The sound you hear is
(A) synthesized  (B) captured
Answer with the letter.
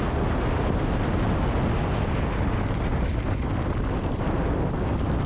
B